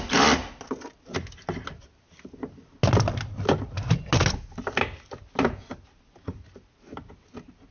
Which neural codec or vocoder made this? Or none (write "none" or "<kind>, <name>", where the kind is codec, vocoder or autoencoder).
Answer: none